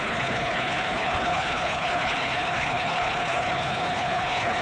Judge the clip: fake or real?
fake